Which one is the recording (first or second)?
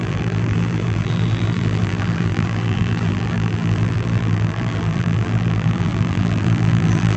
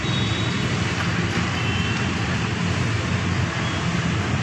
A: second